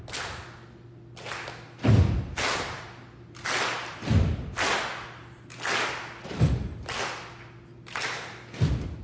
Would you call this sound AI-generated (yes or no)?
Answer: no